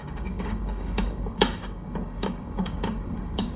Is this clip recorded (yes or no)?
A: no